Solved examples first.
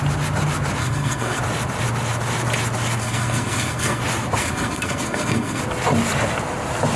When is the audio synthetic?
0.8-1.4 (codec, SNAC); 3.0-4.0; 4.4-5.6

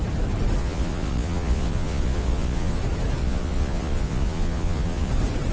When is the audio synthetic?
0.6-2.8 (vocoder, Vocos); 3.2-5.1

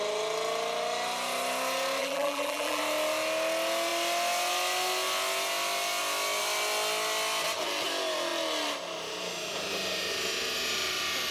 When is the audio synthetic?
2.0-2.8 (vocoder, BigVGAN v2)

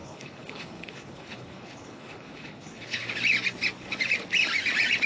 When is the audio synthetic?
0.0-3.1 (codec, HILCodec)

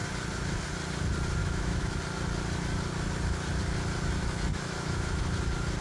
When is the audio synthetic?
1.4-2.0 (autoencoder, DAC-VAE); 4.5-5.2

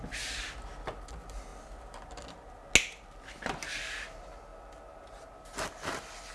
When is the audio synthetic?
none